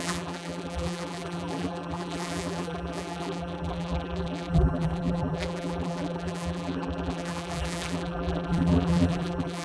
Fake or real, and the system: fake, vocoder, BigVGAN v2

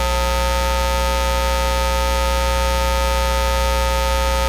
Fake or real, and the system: real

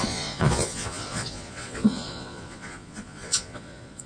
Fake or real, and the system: fake, vocoder, Vocos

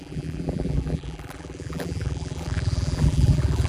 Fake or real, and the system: fake, vocoder, BigVGAN v2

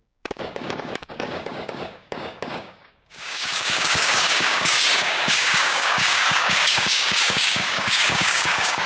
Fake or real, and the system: fake, codec, DAC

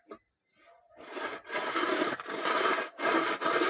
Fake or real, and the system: real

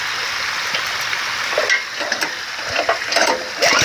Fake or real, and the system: fake, vocoder, BigVGAN v2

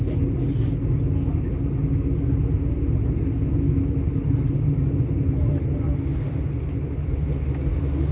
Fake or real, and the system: real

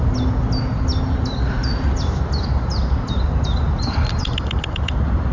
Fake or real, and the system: real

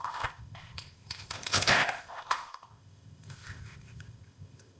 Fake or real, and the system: fake, codec, ZipCodec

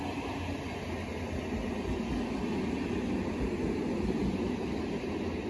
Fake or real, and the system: real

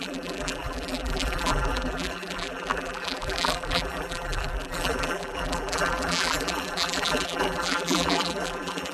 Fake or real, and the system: fake, vocoder, BigVGAN v2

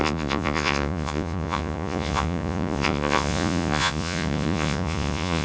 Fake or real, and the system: fake, vocoder, Vocos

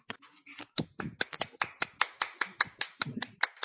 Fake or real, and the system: real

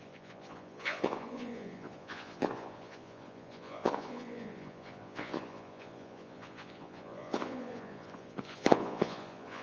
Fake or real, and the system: fake, vocoder, Vocos